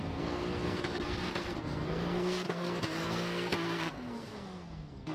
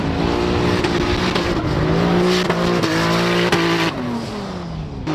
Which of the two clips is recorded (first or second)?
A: second